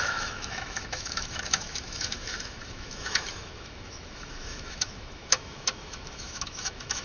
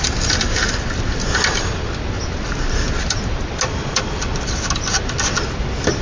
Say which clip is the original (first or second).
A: second